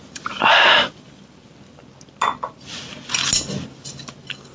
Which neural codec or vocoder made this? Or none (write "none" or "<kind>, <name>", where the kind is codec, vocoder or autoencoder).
none